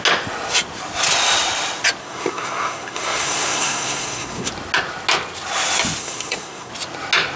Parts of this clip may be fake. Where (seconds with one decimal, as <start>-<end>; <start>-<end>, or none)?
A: 2.0-4.5; 6.0-6.7